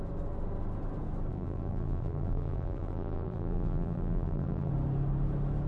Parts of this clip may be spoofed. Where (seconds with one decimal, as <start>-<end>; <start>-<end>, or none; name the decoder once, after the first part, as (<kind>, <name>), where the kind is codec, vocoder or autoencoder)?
1.3-4.7 (vocoder, BigVGAN v2)